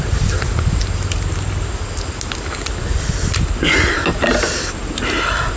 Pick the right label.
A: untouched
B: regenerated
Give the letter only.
A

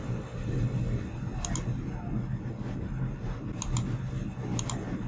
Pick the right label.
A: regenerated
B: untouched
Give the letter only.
B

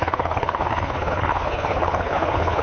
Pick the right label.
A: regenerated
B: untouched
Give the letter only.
A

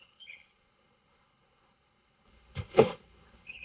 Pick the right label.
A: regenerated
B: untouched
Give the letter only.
A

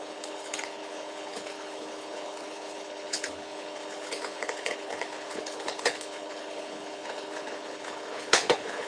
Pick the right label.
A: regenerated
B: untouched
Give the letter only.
A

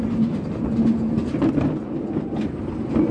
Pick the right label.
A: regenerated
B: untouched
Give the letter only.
B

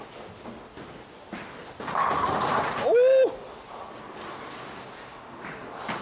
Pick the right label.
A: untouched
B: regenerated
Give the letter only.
A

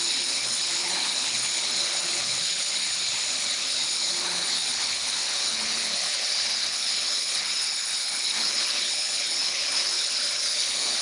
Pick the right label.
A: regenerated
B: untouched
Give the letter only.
A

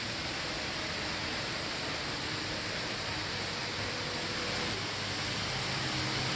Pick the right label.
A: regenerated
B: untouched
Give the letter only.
B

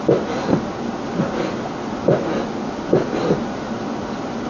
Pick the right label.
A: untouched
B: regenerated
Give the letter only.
A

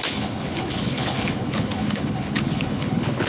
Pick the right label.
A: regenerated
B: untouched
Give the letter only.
A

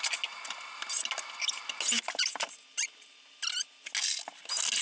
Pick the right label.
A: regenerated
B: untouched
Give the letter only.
B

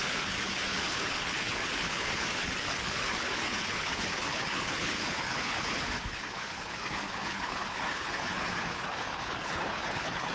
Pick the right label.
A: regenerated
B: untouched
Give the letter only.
A